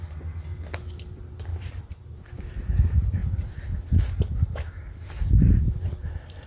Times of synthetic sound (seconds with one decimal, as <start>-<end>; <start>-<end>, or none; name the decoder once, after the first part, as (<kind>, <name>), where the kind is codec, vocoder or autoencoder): 1.5-2.5 (vocoder, BigVGAN v2)